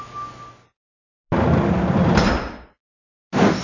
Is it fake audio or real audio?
real